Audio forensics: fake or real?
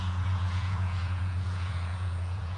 fake